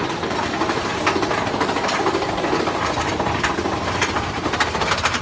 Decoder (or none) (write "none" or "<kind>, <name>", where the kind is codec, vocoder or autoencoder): none